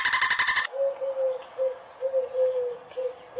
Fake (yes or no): no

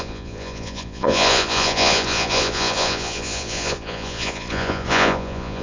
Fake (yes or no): yes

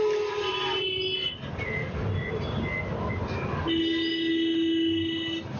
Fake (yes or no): no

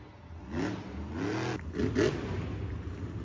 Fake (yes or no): no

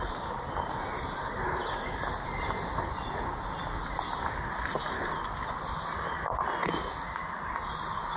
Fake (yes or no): no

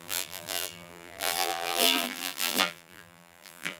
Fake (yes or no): yes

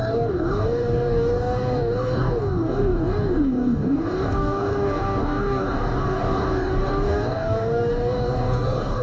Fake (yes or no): yes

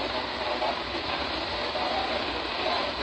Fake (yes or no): yes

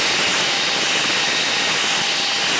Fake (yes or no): no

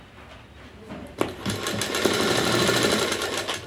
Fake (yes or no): no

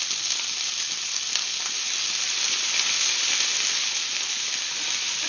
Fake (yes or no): no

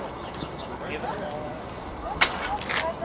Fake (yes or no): no